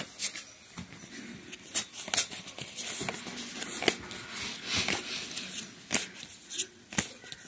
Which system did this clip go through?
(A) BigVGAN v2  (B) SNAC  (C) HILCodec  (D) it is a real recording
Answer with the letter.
D